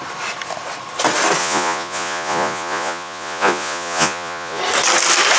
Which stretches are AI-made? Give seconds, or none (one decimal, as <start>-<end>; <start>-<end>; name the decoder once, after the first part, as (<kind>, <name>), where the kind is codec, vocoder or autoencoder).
1.4-4.6 (vocoder, Vocos)